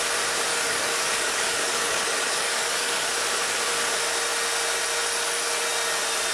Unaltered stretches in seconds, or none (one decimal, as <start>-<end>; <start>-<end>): 0.0-0.5; 3.1-6.3